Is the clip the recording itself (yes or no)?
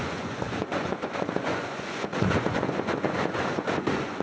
no